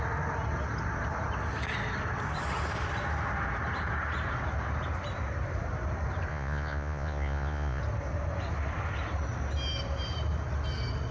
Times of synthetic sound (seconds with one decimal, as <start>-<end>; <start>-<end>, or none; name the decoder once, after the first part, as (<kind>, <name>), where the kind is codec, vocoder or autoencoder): 6.3-7.8 (vocoder, Vocos)